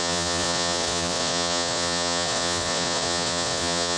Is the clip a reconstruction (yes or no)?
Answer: yes